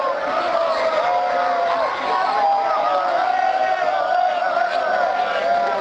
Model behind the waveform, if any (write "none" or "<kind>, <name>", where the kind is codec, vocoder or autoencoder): none